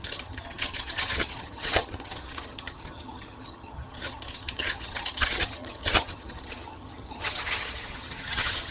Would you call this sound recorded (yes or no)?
no